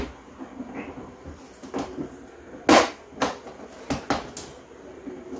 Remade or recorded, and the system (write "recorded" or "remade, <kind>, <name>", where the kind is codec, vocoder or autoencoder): recorded